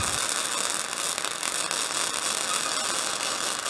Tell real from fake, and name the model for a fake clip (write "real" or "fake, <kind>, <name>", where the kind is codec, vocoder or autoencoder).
real